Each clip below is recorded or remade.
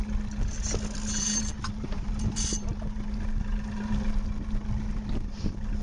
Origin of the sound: recorded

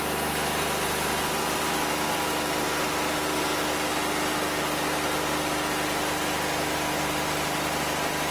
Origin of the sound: recorded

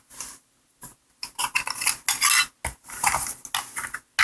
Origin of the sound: recorded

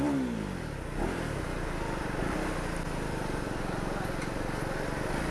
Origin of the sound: recorded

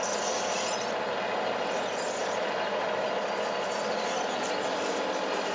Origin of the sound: recorded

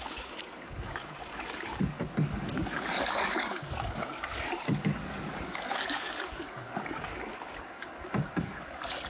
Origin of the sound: remade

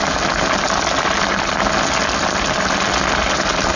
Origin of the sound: recorded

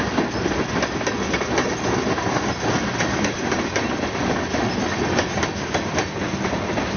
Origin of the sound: recorded